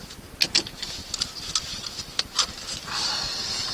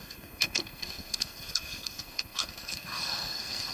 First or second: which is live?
first